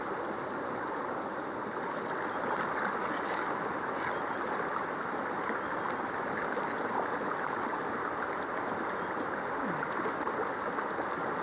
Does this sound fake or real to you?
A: real